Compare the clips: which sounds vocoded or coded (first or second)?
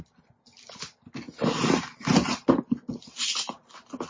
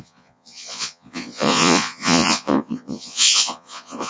second